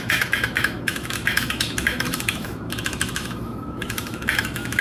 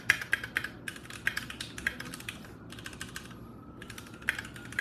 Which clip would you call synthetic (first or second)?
first